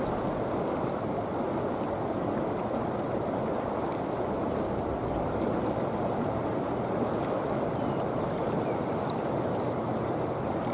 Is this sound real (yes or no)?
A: yes